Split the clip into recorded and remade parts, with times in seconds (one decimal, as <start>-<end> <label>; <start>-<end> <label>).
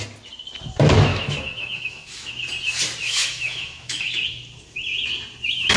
0.0-1.1 recorded; 1.1-2.3 remade; 2.3-3.0 recorded; 3.0-4.2 remade; 4.2-5.8 recorded